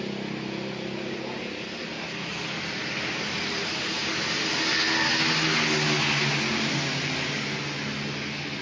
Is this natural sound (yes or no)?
yes